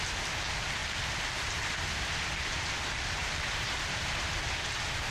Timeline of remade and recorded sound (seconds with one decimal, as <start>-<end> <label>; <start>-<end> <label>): 0.0-3.2 recorded; 3.2-4.3 remade; 4.3-5.1 recorded